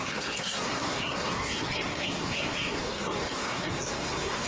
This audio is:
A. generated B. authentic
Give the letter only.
A